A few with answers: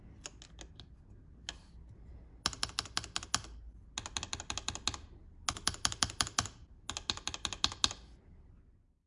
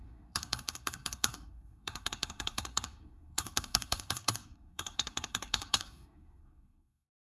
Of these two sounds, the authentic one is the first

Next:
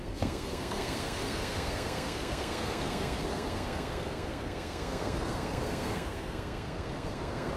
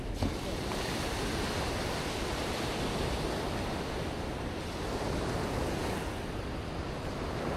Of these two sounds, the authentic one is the second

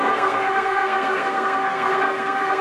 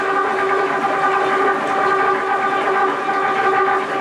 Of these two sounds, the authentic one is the second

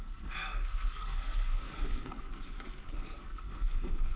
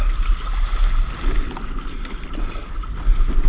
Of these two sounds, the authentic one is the second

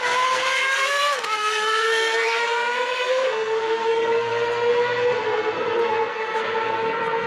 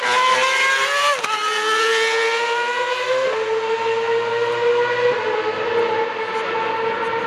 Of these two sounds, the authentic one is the second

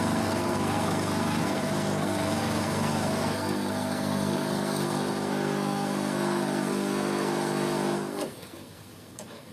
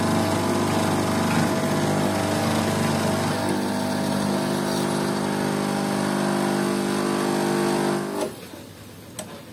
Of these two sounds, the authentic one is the second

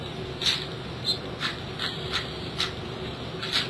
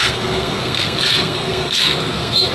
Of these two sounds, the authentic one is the first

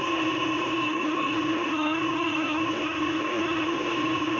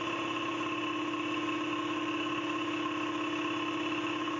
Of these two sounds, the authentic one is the second